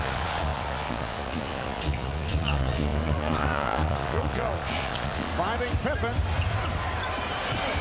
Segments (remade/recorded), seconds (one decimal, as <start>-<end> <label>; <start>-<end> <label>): 0.0-5.3 remade; 5.3-7.8 recorded